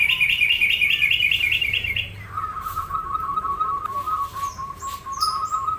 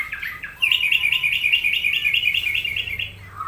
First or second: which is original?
second